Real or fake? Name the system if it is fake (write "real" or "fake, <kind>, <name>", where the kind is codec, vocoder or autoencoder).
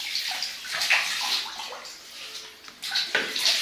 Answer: real